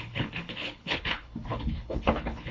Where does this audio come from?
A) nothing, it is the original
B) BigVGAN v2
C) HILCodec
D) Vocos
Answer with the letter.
C